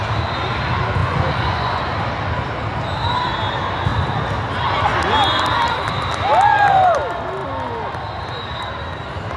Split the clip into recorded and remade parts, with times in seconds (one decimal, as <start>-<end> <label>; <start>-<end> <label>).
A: 0.0-1.0 recorded; 1.0-1.8 remade; 1.8-9.4 recorded